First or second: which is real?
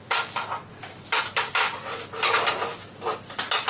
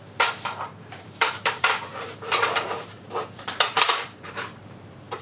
first